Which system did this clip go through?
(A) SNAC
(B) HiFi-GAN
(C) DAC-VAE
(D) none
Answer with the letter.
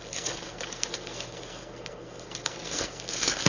A